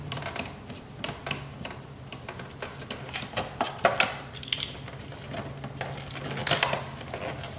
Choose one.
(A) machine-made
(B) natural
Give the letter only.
B